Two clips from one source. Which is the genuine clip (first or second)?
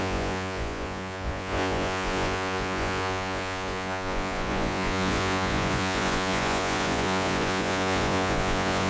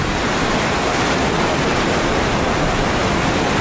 second